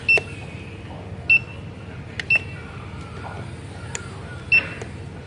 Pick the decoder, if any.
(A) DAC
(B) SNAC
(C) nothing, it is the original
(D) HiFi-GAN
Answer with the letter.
C